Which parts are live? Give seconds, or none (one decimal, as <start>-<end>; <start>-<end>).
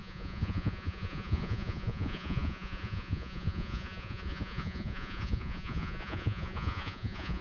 none